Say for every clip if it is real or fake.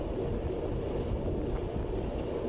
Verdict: real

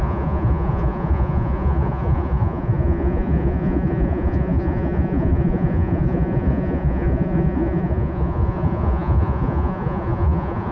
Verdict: fake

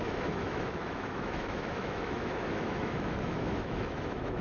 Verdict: fake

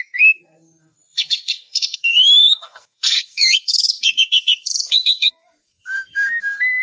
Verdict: fake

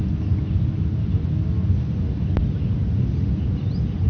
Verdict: real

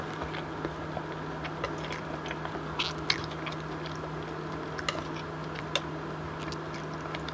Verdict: real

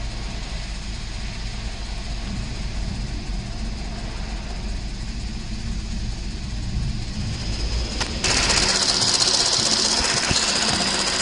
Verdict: real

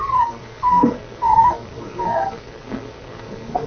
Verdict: fake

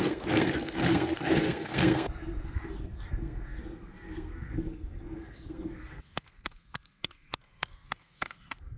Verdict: fake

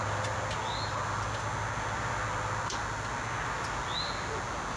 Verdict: real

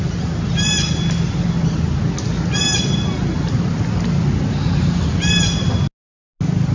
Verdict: real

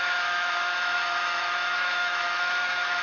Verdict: fake